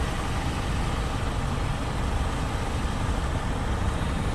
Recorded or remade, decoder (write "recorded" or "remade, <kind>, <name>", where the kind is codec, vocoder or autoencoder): recorded